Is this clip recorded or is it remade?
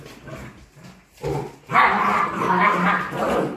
recorded